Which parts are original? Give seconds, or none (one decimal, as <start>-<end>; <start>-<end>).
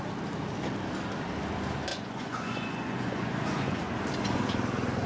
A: 0.0-1.9; 3.8-5.1